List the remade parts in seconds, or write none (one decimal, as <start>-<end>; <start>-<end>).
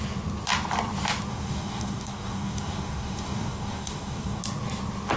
1.3-4.4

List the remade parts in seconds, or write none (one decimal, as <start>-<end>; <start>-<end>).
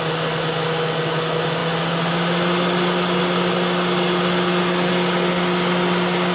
none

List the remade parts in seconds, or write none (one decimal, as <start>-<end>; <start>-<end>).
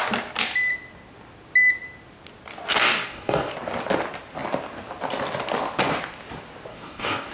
2.7-3.5; 6.7-7.3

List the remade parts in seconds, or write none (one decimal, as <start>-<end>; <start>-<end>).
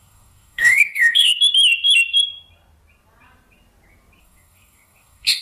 0.0-1.4; 4.2-5.4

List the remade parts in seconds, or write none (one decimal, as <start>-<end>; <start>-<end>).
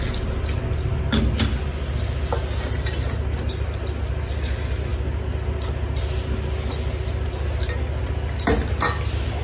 none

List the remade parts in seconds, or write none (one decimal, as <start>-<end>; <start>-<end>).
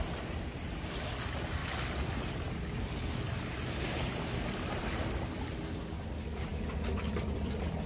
none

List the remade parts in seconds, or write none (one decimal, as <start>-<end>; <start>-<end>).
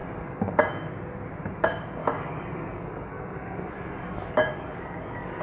0.0-0.6; 2.0-5.4